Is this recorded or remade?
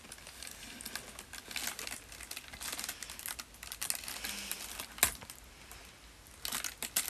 recorded